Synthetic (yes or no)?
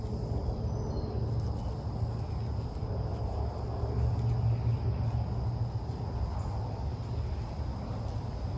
no